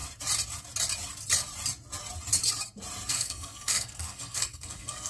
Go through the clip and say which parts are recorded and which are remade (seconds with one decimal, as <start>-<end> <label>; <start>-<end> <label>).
0.0-3.1 recorded; 3.1-5.1 remade

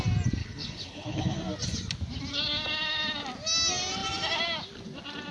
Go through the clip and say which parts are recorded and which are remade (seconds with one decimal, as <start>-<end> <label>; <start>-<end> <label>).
0.0-0.4 recorded; 0.4-1.4 remade; 1.4-5.3 recorded